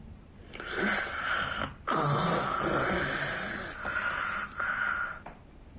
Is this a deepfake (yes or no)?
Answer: no